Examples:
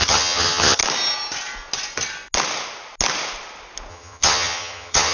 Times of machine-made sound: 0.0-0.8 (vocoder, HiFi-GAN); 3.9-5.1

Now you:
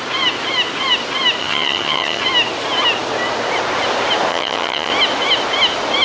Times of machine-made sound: 1.4-2.2 (vocoder, HiFi-GAN); 4.3-4.9